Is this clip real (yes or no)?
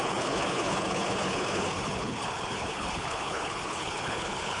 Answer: no